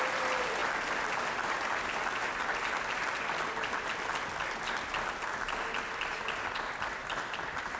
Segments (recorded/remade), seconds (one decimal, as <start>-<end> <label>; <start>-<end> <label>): 0.0-7.8 recorded

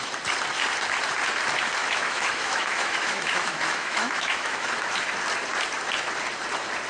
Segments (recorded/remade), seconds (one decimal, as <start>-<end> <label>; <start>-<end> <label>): 0.0-1.8 recorded; 1.8-4.7 remade; 4.7-6.9 recorded

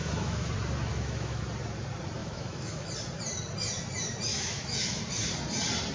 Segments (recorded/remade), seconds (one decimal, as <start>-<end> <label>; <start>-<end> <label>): 0.0-0.5 remade; 0.5-0.9 recorded; 0.9-1.4 remade; 1.4-2.2 recorded; 2.2-2.9 remade; 2.9-4.3 recorded; 4.3-5.0 remade; 5.0-5.9 recorded

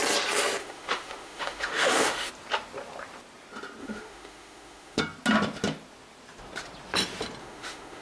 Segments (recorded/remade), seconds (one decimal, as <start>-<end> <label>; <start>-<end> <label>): 0.0-0.6 recorded; 0.6-2.3 remade; 2.3-3.8 recorded; 3.8-5.0 remade; 5.0-7.4 recorded; 7.4-8.0 remade

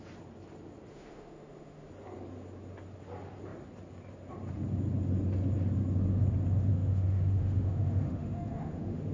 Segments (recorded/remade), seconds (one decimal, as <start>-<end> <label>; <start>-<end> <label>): 0.0-0.9 recorded; 0.9-1.9 remade; 1.9-6.7 recorded; 6.7-9.1 remade

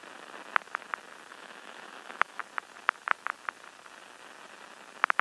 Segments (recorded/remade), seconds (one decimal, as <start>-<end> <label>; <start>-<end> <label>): 0.0-1.3 recorded; 1.3-2.4 remade; 2.4-5.2 recorded

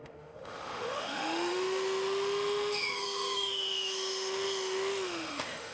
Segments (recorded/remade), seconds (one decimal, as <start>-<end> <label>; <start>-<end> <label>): 0.0-5.7 remade